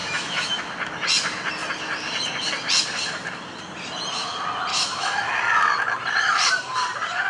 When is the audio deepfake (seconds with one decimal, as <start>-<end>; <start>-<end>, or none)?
0.0-0.6; 4.7-5.3